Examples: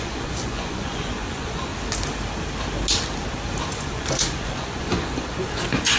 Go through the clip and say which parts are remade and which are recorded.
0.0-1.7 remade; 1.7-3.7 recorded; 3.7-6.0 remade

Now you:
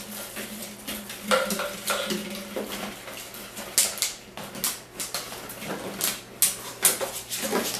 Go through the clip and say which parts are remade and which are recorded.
0.0-7.8 recorded

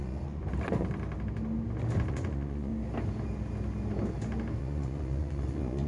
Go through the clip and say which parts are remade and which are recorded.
0.0-0.4 remade; 0.4-2.1 recorded; 2.1-2.7 remade; 2.7-4.6 recorded; 4.6-5.9 remade

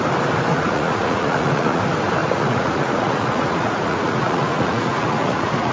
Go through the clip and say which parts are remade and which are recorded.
0.0-0.5 recorded; 0.5-1.8 remade; 1.8-2.2 recorded; 2.2-5.7 remade

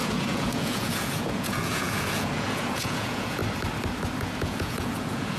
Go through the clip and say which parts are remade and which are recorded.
0.0-3.4 remade; 3.4-4.2 recorded; 4.2-5.4 remade

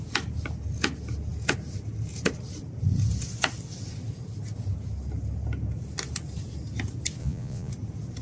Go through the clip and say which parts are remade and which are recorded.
0.0-7.2 recorded; 7.2-7.7 remade; 7.7-8.2 recorded

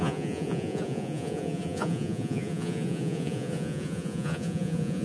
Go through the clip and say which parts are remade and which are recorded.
0.0-5.0 remade

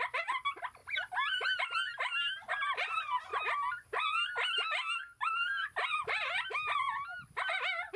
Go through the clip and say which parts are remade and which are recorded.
0.0-8.0 recorded